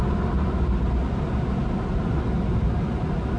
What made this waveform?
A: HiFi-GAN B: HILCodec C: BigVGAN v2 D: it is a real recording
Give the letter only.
D